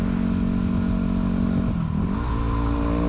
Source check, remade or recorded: recorded